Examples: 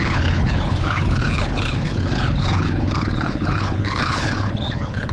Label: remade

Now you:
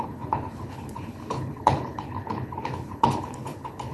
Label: remade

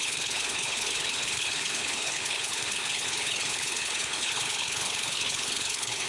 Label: remade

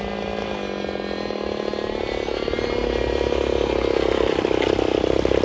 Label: recorded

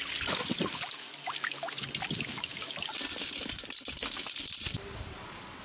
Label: recorded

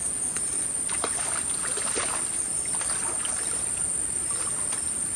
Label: recorded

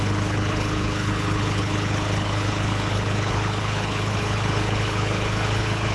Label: remade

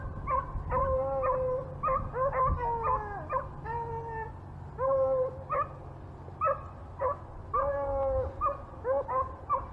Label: recorded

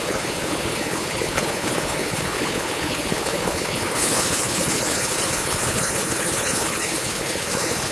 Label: remade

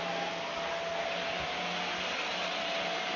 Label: recorded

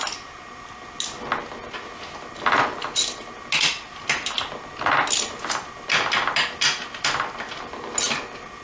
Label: recorded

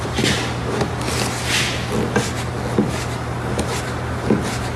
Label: recorded